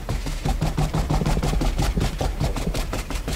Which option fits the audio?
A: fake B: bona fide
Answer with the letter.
A